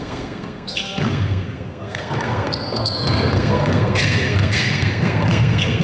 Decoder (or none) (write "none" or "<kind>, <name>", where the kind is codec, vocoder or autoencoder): codec, SNAC